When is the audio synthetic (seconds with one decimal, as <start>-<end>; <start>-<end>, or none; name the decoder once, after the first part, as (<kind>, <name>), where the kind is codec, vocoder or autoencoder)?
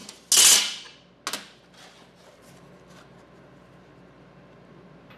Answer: none